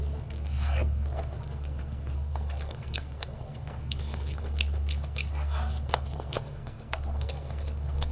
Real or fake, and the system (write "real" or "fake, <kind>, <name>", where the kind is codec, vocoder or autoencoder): fake, codec, SNAC